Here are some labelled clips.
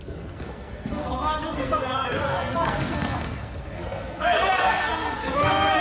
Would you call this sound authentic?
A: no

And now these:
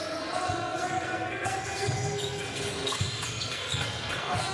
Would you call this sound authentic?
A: no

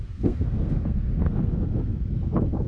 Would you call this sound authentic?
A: no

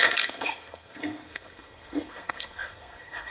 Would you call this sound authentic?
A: no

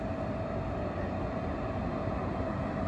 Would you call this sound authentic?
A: yes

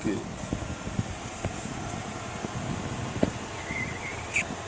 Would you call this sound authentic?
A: yes